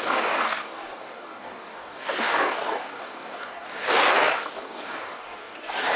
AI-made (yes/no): yes